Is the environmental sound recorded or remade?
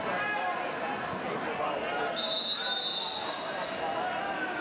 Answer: recorded